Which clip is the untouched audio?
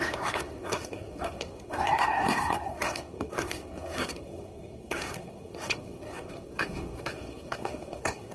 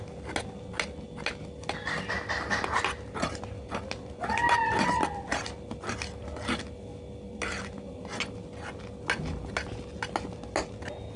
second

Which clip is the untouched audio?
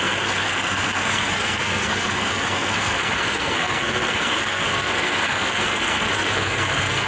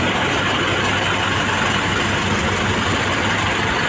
second